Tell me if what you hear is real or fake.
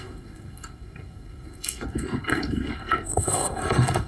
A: fake